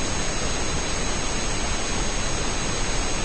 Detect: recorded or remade recorded